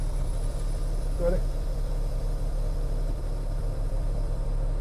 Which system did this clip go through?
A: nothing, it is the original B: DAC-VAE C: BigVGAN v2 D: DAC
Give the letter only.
C